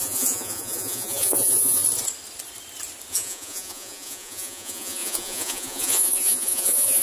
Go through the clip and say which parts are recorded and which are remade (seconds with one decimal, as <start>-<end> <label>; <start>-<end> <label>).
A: 0.0-1.8 remade; 1.8-3.1 recorded; 3.1-7.0 remade